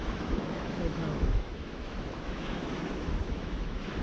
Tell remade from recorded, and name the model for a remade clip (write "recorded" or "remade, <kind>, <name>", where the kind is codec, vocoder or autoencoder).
remade, autoencoder, DAC-VAE